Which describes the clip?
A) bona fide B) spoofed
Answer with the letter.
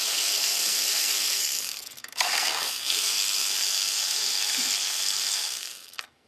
B